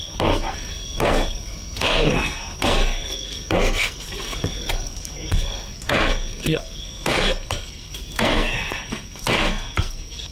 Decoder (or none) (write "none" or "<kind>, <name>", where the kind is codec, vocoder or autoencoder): codec, SNAC